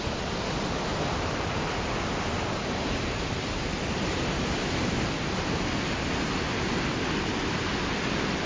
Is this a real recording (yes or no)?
yes